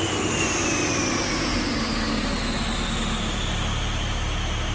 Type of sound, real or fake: real